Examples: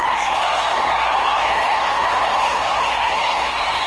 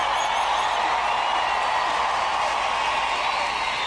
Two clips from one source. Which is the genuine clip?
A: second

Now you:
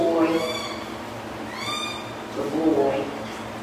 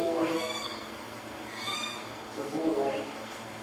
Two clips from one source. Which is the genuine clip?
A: first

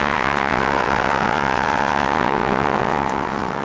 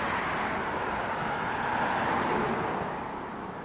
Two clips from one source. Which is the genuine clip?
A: second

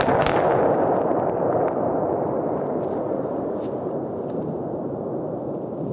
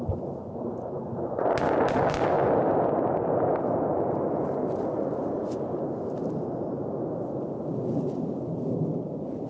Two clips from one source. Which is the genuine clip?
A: second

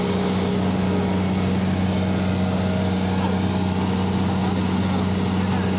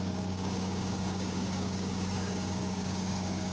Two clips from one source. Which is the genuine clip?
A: first